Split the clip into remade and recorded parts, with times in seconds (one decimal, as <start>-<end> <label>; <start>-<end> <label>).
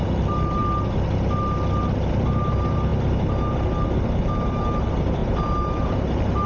0.0-6.5 recorded